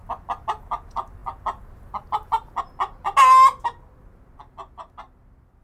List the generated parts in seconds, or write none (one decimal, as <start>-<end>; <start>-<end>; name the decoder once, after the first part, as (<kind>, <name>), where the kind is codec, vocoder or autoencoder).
none